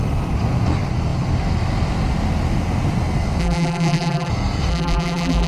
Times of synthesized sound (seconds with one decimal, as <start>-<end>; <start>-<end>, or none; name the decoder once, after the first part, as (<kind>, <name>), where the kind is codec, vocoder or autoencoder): 3.4-4.3 (vocoder, BigVGAN v2); 4.7-5.5